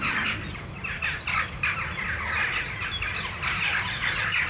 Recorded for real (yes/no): yes